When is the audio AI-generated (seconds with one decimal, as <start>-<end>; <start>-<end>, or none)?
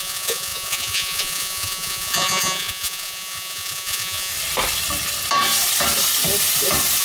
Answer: 0.0-4.3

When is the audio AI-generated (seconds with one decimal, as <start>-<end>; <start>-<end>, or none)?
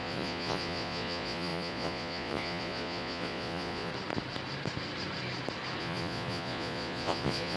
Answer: 0.0-3.9; 5.8-7.6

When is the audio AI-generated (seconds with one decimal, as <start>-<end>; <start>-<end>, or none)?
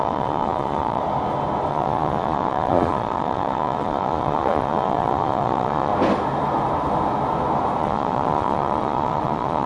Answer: 0.0-1.0; 1.7-5.9; 7.8-9.7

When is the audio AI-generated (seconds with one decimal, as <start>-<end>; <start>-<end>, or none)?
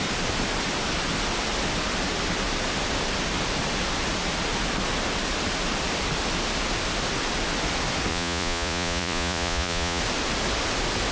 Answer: 8.1-10.0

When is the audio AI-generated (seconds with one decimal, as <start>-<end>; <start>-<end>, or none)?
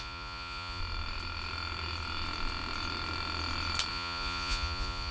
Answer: 0.0-0.8; 3.9-5.1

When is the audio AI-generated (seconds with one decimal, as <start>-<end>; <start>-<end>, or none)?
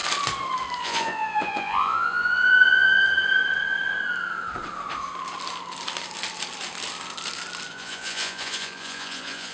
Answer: 0.8-3.0; 7.7-9.5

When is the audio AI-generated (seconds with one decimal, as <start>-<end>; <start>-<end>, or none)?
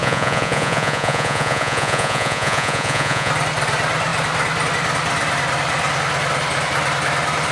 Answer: 0.0-3.3